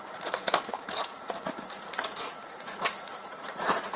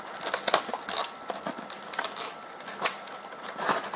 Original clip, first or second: second